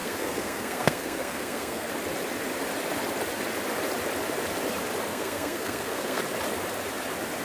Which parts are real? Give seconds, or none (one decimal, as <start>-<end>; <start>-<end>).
1.9-5.1; 6.2-7.4